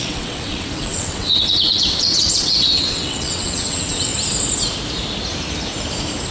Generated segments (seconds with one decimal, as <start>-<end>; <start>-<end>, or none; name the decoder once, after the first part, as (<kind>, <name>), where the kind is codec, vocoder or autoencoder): 0.0-4.1 (vocoder, WaveNeXt)